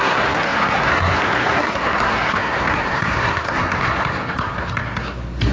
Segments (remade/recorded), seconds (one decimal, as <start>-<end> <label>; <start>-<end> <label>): 0.0-5.5 remade